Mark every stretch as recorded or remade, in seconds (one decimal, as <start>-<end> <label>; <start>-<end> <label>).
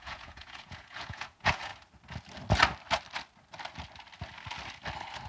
0.0-1.7 remade; 1.7-5.3 recorded